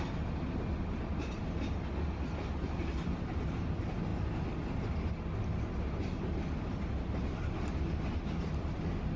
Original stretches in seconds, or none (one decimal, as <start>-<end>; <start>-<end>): 0.0-9.2